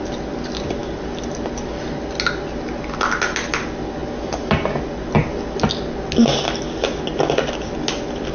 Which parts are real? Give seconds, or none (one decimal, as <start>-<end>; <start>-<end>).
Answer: 0.0-8.3